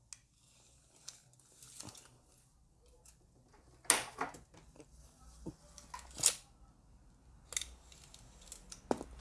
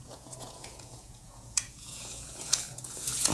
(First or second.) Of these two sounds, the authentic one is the first